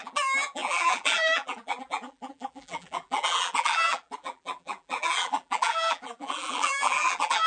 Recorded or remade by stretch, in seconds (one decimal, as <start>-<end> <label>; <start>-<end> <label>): 0.0-7.5 remade